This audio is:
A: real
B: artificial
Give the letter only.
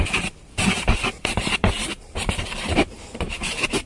B